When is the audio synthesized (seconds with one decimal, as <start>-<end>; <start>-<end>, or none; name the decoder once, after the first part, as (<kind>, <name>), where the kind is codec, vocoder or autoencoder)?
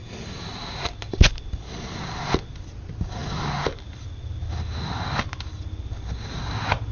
none